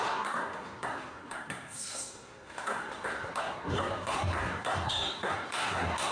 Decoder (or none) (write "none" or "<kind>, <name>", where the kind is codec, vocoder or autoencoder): codec, SNAC